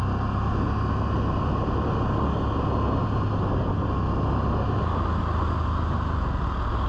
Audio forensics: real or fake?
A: real